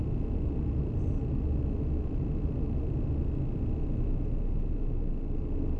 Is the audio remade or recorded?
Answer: recorded